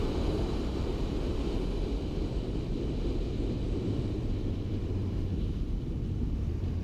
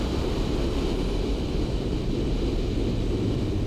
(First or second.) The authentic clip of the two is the second